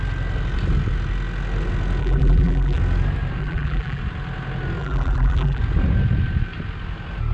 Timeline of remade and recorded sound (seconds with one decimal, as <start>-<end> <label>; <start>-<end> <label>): 0.0-2.0 recorded; 2.0-2.8 remade; 2.8-3.4 recorded; 3.4-4.0 remade; 4.0-4.8 recorded; 4.8-5.6 remade; 5.6-7.3 recorded